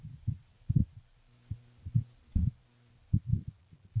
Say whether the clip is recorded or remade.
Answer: recorded